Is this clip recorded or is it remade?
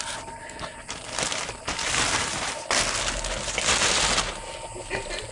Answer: recorded